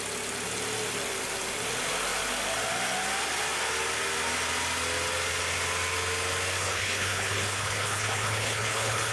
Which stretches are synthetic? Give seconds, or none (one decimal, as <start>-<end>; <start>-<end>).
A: 6.6-9.1